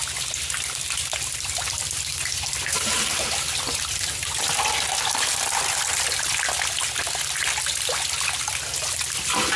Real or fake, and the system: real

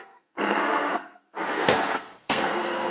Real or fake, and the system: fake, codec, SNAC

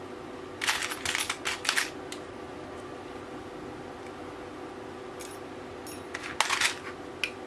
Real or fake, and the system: real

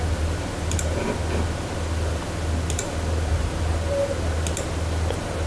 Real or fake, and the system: real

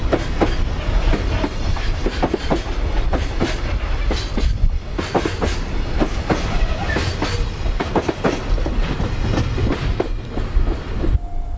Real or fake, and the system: real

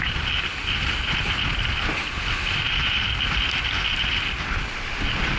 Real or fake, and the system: real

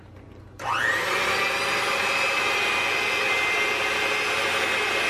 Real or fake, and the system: real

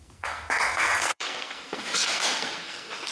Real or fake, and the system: fake, codec, SNAC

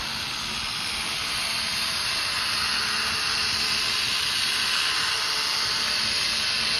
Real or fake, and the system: real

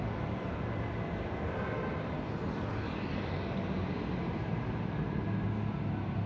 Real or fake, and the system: real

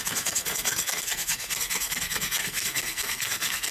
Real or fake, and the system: fake, codec, SNAC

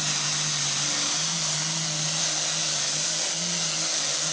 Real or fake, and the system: real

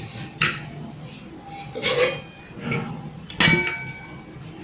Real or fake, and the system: real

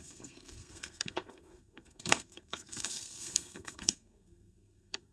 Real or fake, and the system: fake, codec, SNAC